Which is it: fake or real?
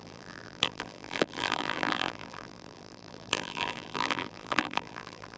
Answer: fake